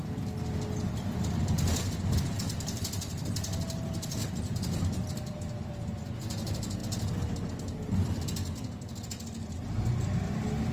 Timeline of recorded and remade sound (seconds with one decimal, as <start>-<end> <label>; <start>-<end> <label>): 0.0-10.7 recorded